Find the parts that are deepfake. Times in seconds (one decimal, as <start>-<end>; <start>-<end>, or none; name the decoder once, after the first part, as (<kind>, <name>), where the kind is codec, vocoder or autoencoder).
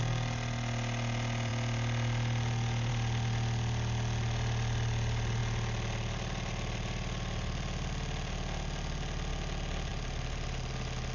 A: 9.9-10.7 (vocoder, BigVGAN v2)